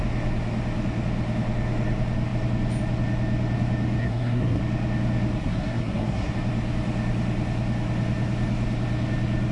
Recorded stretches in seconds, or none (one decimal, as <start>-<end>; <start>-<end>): 0.0-4.0; 4.6-5.4; 6.3-9.5